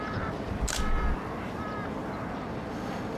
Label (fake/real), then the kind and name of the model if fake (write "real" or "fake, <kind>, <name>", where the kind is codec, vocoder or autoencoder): real